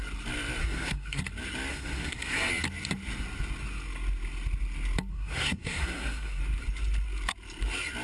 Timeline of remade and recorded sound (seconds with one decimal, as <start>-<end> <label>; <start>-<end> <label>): 0.0-0.6 recorded; 0.6-1.2 remade; 1.2-1.7 recorded; 1.7-2.5 remade; 2.5-5.1 recorded; 5.1-6.4 remade; 6.4-8.0 recorded